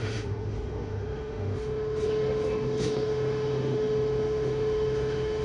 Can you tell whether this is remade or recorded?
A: remade